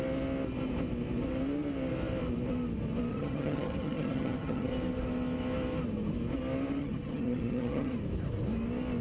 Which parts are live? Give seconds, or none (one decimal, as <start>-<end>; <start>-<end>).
0.0-3.1; 4.7-6.8; 7.9-9.0